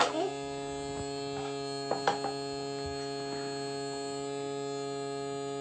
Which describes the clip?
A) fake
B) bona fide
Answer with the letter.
B